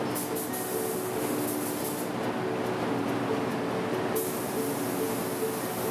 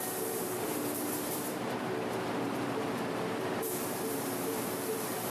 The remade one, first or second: second